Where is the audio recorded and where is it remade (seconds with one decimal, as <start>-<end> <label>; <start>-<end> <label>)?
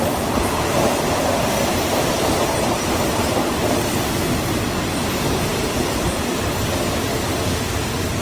0.0-8.2 recorded